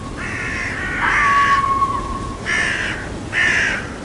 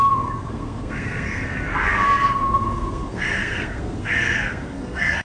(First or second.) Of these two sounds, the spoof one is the second